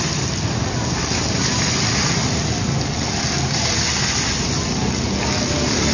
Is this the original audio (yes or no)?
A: yes